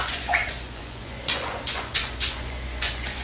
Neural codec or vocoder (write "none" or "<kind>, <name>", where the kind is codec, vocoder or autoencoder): vocoder, Vocos